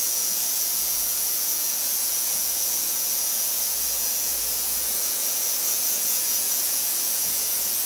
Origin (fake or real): fake